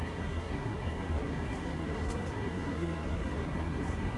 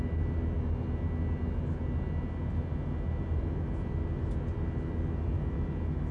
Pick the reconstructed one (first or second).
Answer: first